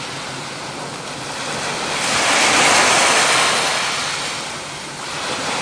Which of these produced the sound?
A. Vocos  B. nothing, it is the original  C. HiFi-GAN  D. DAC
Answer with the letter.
B